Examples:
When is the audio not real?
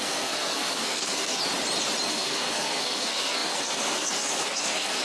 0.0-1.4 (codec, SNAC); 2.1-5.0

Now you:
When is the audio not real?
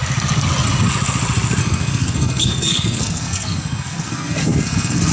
1.6-5.1 (codec, SNAC)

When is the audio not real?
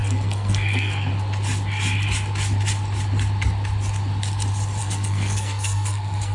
0.0-1.1 (codec, SNAC); 4.8-6.3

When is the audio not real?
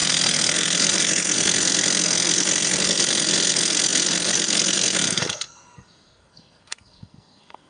0.0-7.7 (codec, SNAC)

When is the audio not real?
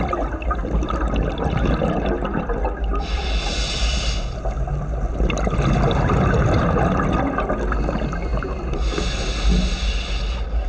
none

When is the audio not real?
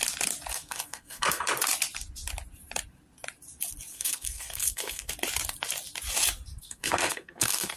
0.5-1.4 (codec, SNAC); 3.9-5.1; 6.6-7.8